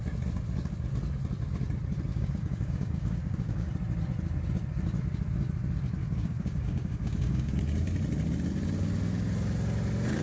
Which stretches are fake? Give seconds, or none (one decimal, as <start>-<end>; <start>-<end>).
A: 2.1-3.7; 6.0-7.6